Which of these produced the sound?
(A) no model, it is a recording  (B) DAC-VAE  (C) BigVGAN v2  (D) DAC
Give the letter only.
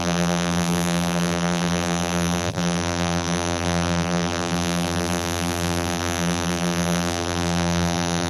C